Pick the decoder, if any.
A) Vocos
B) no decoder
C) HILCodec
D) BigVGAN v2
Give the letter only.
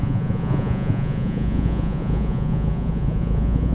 A